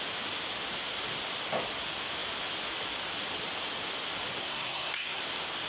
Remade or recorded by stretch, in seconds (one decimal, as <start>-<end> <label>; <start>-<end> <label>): 0.0-4.4 recorded; 4.4-5.2 remade; 5.2-5.7 recorded